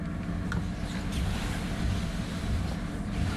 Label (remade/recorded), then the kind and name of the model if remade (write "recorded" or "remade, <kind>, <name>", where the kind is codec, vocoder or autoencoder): recorded